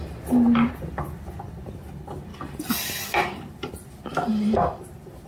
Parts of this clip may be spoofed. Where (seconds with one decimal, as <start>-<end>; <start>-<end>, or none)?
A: 2.3-5.3